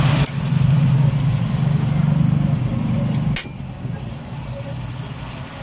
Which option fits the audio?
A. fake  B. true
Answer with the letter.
B